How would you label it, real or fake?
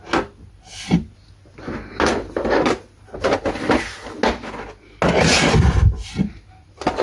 real